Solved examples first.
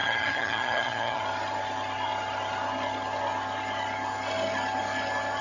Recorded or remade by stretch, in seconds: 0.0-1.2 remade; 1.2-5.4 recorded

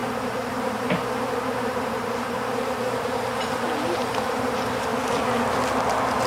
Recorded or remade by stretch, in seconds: 0.0-4.9 remade; 4.9-6.3 recorded

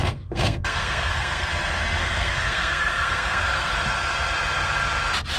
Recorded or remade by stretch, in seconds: 0.0-1.5 remade; 1.5-2.0 recorded; 2.0-3.7 remade; 3.7-5.4 recorded

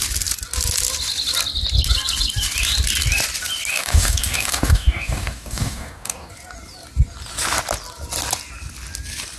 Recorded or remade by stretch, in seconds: 0.0-3.7 recorded; 3.7-6.3 remade; 6.3-9.4 recorded

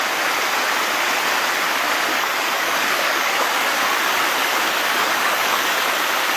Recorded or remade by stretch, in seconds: 0.0-2.1 recorded; 2.1-4.0 remade; 4.0-4.4 recorded; 4.4-5.8 remade; 5.8-6.4 recorded